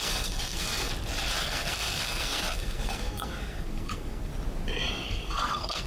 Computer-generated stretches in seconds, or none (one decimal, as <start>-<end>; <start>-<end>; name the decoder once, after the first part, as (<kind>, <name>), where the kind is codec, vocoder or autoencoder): 0.0-0.9 (codec, SNAC); 1.4-4.3; 4.9-5.9